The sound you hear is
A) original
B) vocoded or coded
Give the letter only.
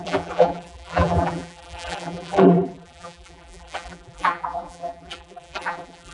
B